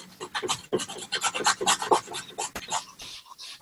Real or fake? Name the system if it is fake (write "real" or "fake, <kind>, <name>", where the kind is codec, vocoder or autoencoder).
real